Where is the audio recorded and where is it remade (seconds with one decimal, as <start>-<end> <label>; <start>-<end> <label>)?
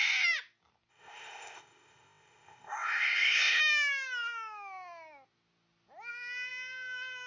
0.0-0.9 recorded; 0.9-3.6 remade; 3.6-7.3 recorded